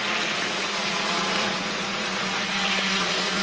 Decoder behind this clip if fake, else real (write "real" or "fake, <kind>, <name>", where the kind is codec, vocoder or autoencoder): fake, vocoder, Vocos